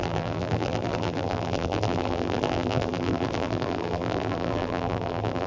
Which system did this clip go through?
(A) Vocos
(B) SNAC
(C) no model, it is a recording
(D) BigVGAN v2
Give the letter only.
D